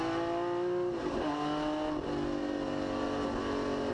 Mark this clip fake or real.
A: real